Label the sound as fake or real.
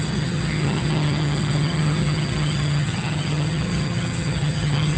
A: fake